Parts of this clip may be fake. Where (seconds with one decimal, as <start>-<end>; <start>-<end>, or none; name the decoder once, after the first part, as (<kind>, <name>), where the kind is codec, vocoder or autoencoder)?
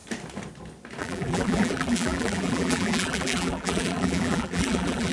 1.0-5.1 (vocoder, BigVGAN v2)